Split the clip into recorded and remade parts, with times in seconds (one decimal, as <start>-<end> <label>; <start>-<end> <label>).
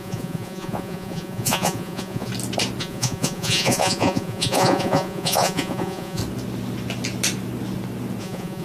0.0-2.3 remade; 2.3-2.8 recorded; 2.8-6.2 remade; 6.2-8.2 recorded; 8.2-8.6 remade